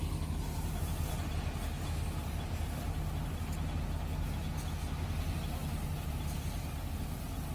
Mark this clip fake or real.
real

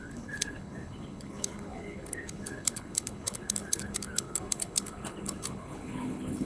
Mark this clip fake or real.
fake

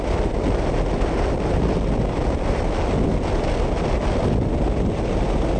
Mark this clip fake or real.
real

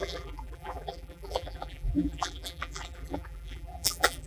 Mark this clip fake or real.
fake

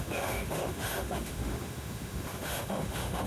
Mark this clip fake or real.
fake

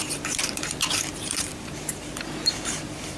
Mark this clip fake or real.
fake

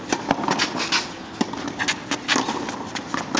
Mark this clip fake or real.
real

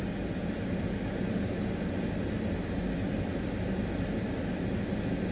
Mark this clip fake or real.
real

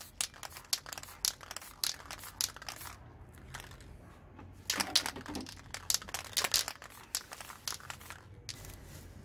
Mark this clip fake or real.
real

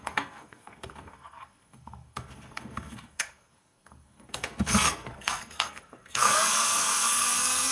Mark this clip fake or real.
fake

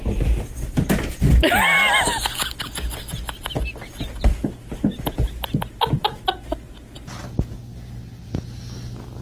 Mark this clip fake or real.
real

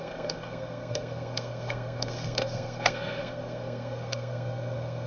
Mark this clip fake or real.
fake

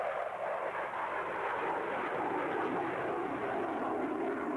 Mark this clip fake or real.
real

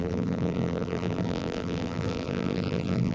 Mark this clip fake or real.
fake